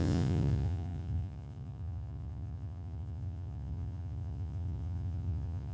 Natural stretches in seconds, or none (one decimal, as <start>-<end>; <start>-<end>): none